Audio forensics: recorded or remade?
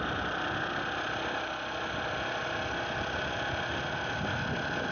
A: recorded